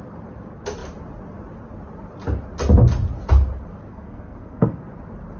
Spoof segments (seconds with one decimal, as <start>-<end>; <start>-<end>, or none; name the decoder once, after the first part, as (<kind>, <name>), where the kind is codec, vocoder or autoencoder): 3.9-4.8 (codec, SNAC)